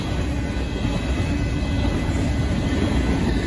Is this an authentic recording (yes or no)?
yes